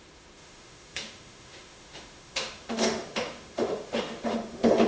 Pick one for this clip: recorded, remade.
remade